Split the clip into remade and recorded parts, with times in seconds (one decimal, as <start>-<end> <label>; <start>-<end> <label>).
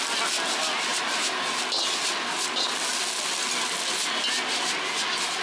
0.0-5.4 recorded